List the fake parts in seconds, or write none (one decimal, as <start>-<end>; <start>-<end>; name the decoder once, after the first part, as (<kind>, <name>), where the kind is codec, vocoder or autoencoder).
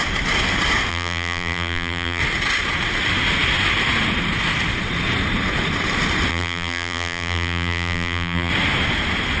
0.9-2.2 (vocoder, BigVGAN v2); 6.3-8.5